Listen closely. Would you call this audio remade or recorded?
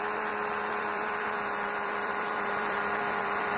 remade